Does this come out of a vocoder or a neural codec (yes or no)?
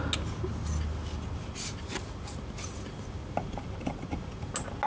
no